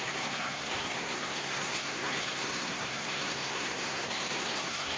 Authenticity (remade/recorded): remade